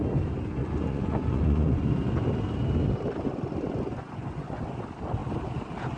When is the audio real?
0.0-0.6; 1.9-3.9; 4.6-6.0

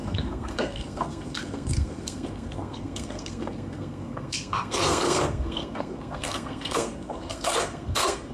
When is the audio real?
none

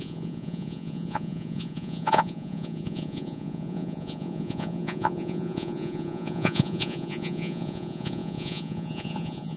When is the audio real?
none

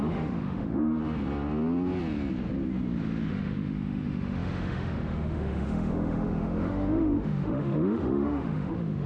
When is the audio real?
1.0-3.3

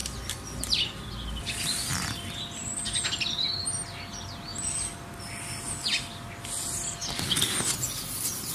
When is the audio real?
0.0-8.5

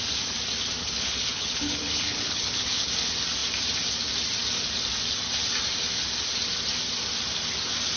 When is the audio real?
0.0-0.8; 2.9-8.0

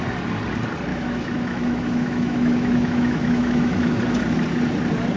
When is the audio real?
0.0-0.9; 4.0-5.2